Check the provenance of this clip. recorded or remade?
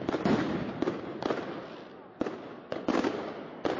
recorded